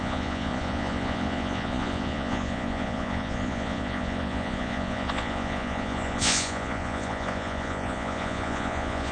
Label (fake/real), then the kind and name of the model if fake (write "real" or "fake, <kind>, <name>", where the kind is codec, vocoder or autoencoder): fake, vocoder, Vocos